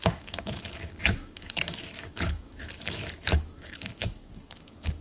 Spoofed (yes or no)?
yes